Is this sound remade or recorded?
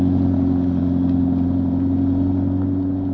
recorded